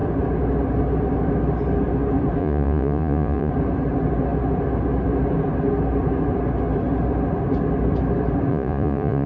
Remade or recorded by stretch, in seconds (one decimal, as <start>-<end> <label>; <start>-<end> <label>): 0.0-2.4 recorded; 2.4-3.5 remade; 3.5-8.5 recorded; 8.5-9.3 remade